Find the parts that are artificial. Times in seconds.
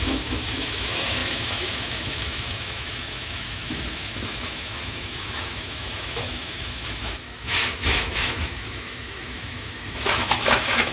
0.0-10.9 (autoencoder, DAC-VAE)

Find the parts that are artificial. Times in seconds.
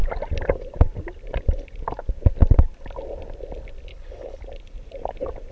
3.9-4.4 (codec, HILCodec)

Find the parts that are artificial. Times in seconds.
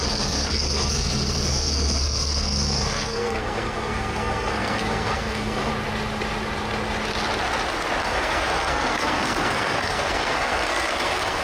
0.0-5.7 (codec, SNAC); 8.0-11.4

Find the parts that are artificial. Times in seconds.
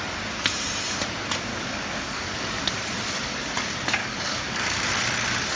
1.5-2.7 (codec, DAC); 4.0-4.8